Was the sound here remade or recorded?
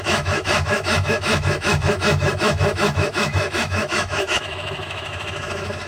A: remade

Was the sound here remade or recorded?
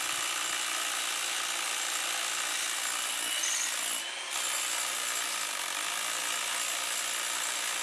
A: recorded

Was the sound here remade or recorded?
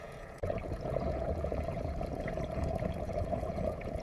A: remade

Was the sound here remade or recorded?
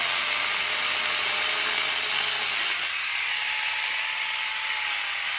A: recorded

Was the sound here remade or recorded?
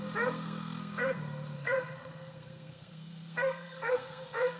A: remade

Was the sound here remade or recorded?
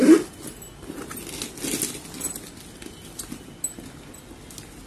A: recorded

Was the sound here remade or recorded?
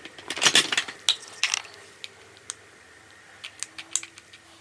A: recorded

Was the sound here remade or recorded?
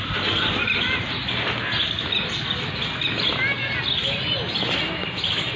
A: recorded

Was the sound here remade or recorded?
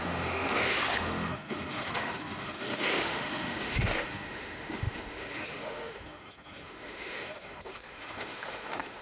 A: remade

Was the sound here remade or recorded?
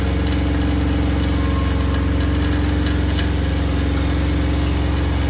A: recorded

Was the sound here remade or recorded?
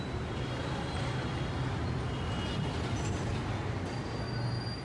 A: recorded